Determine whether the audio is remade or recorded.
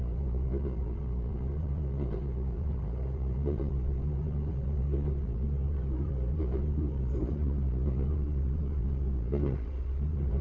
remade